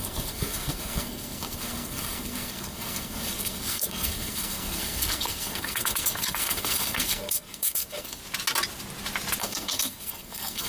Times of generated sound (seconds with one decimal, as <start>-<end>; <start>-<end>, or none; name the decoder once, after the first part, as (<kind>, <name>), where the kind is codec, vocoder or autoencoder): 0.0-8.2 (codec, SNAC); 9.4-10.7